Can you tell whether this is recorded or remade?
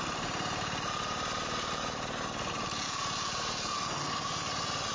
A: recorded